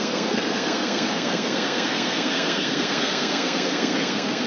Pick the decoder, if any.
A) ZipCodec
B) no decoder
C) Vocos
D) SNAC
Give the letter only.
D